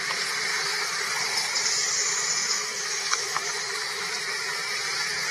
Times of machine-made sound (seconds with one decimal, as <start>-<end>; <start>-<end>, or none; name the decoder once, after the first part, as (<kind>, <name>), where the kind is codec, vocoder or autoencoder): 0.5-1.1 (autoencoder, DAC-VAE); 2.0-4.1